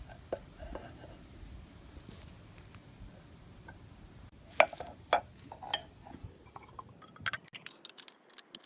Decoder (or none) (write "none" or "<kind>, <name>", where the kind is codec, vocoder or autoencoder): none